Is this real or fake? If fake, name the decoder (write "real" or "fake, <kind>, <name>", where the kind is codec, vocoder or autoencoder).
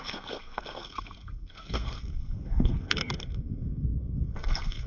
fake, codec, SNAC